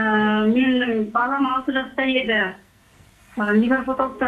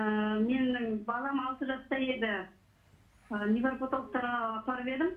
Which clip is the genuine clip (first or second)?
second